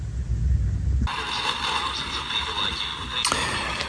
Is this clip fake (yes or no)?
no